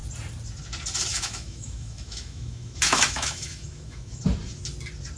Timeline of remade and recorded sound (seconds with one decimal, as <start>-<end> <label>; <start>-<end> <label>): 0.0-1.1 recorded; 1.1-4.2 remade; 4.2-5.2 recorded